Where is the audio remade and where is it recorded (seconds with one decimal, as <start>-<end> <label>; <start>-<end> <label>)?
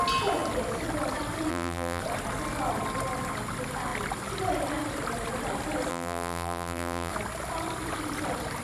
0.0-1.5 recorded; 1.5-2.0 remade; 2.0-5.9 recorded; 5.9-7.1 remade; 7.1-8.6 recorded